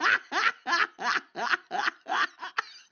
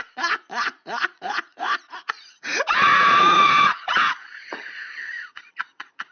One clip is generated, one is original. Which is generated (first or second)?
second